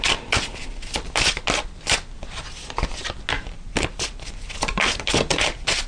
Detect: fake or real real